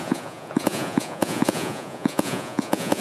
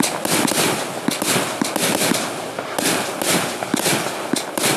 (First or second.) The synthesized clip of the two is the first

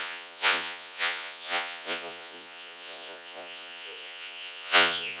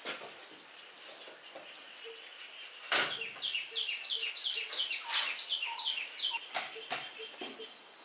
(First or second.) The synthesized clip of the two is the first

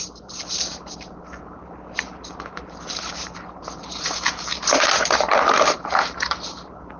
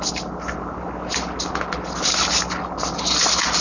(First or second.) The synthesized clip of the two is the first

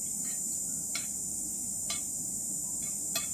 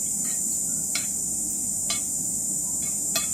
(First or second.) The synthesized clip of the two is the first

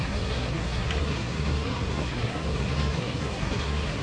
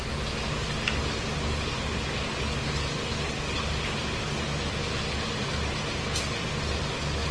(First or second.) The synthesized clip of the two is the first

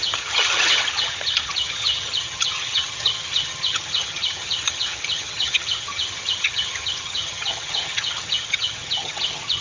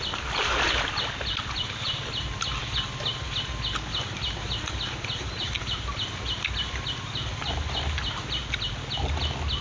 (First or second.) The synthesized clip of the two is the first